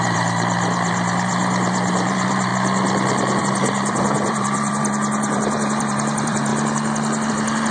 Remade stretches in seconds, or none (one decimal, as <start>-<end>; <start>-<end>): 0.0-2.5; 3.4-6.5; 7.3-7.7